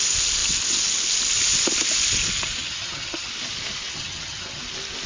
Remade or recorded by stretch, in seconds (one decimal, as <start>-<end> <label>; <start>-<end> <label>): 0.0-2.6 recorded; 2.6-3.3 remade; 3.3-3.9 recorded; 3.9-4.6 remade; 4.6-5.1 recorded